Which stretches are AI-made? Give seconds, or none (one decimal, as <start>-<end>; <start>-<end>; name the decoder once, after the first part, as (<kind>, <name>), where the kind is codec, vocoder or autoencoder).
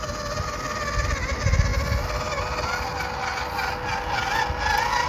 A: none